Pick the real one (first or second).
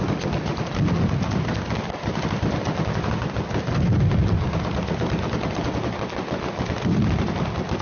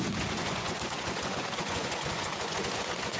first